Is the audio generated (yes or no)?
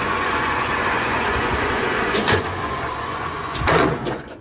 yes